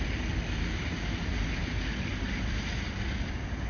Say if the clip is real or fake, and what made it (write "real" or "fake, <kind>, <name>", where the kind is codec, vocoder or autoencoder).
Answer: real